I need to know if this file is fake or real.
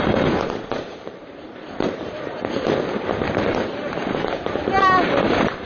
fake